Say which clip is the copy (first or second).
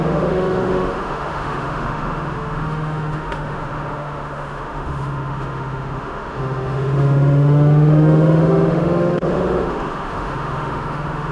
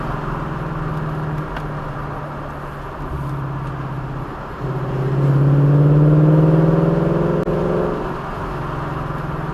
first